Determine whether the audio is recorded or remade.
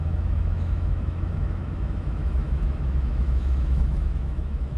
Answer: remade